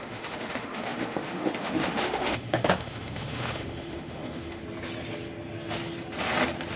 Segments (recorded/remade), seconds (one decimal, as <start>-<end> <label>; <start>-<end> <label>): 0.0-4.6 remade; 4.6-6.8 recorded